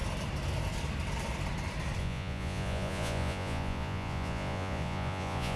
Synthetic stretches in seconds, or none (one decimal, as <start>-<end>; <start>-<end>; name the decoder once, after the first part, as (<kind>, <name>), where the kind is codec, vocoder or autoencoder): 2.0-5.6 (vocoder, Vocos)